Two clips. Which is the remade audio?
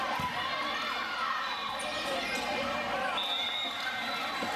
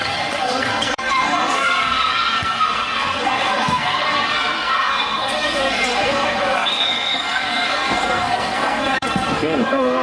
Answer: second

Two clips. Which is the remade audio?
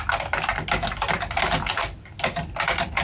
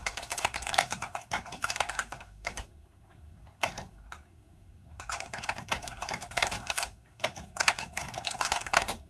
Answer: second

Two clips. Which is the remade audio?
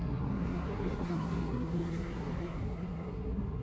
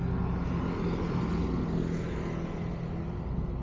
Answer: first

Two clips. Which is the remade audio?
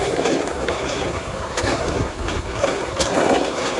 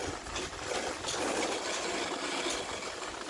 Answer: first